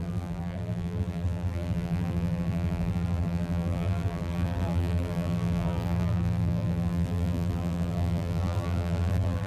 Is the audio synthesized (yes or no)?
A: yes